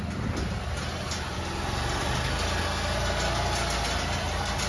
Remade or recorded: recorded